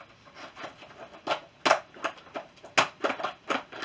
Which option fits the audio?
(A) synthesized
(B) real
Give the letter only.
B